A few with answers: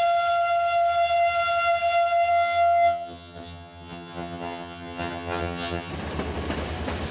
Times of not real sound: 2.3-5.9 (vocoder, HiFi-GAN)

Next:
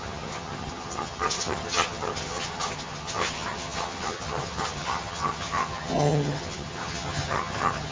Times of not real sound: 0.0-7.9 (vocoder, HiFi-GAN)

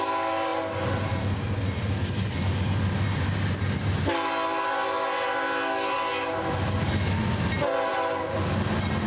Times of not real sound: none

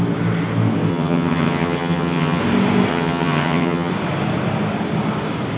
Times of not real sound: 0.9-2.4 (vocoder, HiFi-GAN); 2.9-3.9